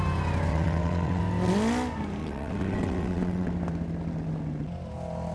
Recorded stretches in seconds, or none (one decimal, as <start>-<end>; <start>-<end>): 0.0-0.5; 1.2-2.2; 3.5-5.3